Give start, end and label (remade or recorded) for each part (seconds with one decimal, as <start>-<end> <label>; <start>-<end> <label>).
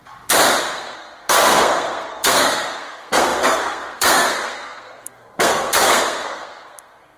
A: 0.0-0.6 recorded; 0.6-7.2 remade